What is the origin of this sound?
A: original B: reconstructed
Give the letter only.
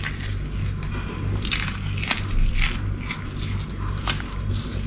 A